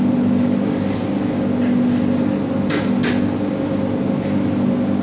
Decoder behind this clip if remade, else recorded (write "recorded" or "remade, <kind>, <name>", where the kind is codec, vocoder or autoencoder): recorded